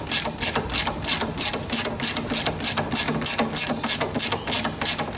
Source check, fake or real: real